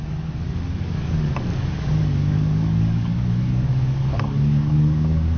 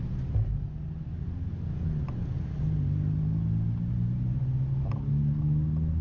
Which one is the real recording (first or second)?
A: second